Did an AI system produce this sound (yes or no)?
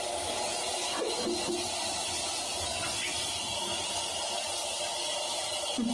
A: no